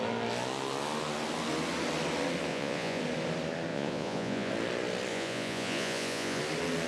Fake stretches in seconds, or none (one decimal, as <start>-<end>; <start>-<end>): 2.5-3.0; 3.7-4.5; 5.1-6.4